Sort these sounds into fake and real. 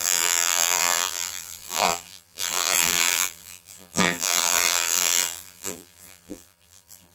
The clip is fake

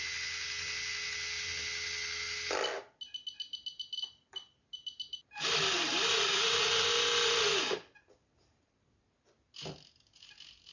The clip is real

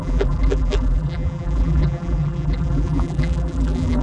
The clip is fake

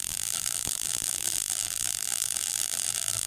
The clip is fake